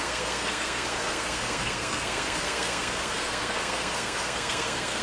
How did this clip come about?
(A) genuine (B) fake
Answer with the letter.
B